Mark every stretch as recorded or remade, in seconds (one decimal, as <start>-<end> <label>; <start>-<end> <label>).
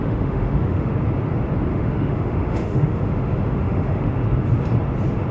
0.0-0.9 remade; 0.9-1.7 recorded; 1.7-4.1 remade; 4.1-5.3 recorded